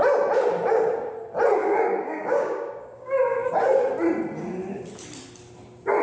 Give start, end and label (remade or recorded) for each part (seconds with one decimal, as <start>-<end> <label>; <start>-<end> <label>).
0.0-1.6 recorded; 1.6-3.5 remade; 3.5-6.0 recorded